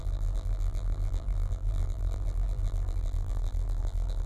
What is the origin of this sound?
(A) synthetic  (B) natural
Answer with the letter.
A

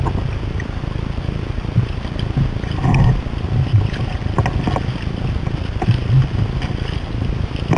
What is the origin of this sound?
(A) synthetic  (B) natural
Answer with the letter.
B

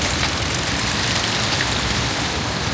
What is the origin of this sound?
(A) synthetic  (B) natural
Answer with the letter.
B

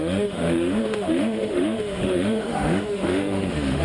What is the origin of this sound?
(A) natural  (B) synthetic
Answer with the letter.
B